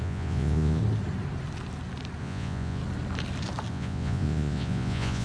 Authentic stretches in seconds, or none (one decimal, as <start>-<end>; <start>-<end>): 0.8-2.2; 2.8-3.7